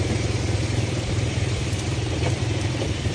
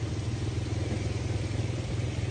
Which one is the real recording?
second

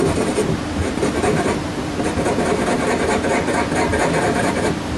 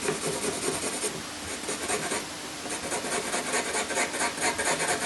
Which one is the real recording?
second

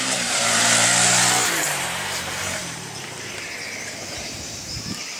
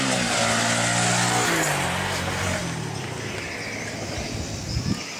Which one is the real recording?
second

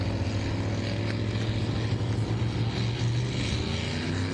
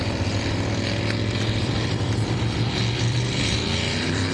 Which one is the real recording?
first